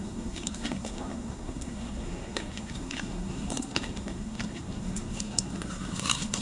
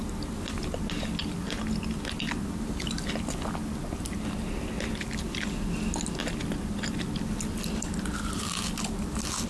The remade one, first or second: first